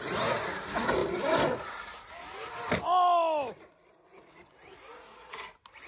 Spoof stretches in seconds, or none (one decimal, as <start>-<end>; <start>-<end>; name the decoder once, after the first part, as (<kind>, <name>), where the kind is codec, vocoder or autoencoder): none